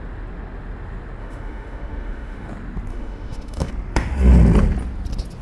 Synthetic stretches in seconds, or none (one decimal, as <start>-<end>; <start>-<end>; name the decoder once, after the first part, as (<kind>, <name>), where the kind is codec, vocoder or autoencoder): 1.2-2.5 (autoencoder, DAC-VAE); 2.9-3.7

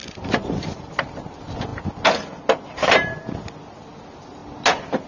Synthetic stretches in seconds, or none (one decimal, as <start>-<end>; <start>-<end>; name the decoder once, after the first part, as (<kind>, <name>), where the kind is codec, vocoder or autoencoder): none

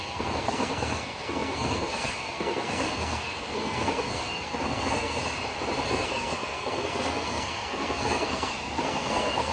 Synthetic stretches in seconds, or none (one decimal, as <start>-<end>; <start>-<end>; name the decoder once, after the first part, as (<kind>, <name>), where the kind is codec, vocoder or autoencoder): 0.0-5.2 (codec, SNAC); 5.9-9.5

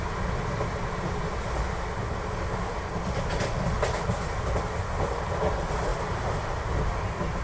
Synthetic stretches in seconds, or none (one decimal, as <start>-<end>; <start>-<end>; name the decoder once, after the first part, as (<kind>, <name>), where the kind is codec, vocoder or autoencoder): none

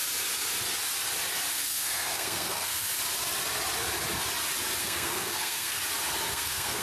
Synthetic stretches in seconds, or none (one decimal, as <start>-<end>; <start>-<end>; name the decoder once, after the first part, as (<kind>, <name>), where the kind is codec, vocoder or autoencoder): 1.5-2.9 (codec, SNAC); 4.8-5.8; 6.3-6.8

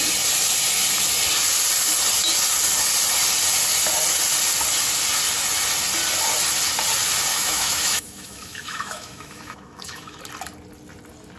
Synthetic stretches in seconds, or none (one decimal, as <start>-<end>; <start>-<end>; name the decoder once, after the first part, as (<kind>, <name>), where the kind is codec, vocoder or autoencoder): 7.3-10.2 (autoencoder, DAC-VAE)

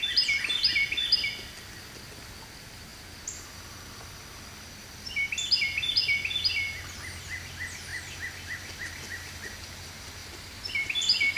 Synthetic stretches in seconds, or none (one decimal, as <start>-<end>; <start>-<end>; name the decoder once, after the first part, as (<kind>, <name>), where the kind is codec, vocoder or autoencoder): none